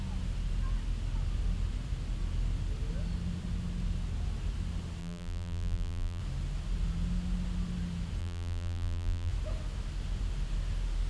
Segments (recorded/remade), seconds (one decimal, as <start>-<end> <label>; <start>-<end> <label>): 0.0-5.0 recorded; 5.0-6.2 remade; 6.2-8.2 recorded; 8.2-9.3 remade; 9.3-11.1 recorded